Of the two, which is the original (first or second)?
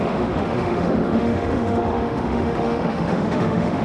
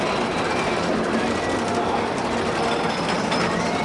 second